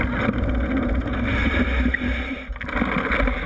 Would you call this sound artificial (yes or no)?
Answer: no